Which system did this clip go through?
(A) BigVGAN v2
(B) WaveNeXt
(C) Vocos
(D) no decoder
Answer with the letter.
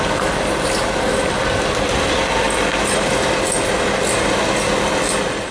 D